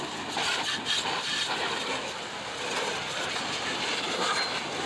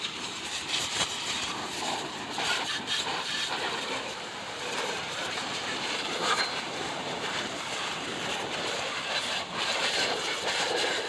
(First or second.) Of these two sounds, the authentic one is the first